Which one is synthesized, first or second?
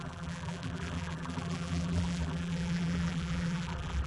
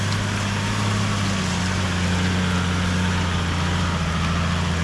first